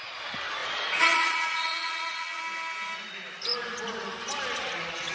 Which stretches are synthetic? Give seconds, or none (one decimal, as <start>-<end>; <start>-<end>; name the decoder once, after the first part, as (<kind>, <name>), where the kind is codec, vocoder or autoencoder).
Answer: 0.6-2.4 (vocoder, Vocos)

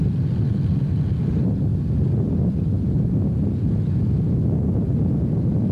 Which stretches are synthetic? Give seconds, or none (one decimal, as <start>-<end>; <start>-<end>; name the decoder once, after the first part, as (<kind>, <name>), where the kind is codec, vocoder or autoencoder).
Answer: none